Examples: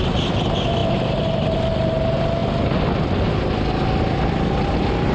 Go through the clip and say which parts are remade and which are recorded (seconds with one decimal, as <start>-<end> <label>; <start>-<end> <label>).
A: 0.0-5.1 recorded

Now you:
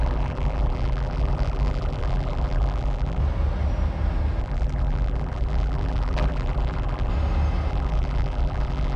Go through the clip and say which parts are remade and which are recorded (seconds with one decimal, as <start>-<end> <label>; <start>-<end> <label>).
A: 0.0-3.2 remade; 3.2-4.4 recorded; 4.4-7.1 remade; 7.1-7.7 recorded; 7.7-9.0 remade

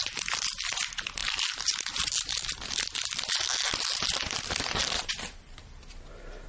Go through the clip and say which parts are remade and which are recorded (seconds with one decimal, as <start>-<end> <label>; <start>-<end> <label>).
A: 0.0-6.5 recorded